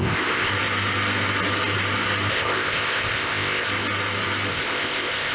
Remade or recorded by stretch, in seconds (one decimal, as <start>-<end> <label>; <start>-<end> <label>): 0.0-0.5 remade; 0.5-2.3 recorded; 2.3-3.7 remade; 3.7-4.5 recorded; 4.5-5.3 remade